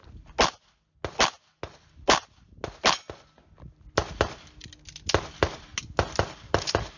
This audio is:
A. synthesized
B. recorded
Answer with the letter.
B